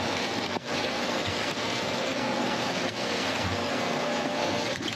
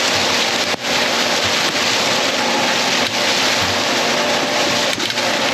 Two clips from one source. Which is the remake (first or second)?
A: first